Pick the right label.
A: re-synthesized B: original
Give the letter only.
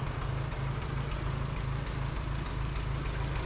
A